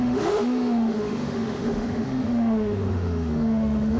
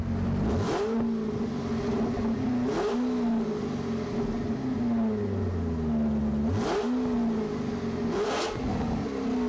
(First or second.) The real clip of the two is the second